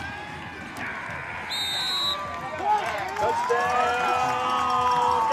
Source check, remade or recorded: recorded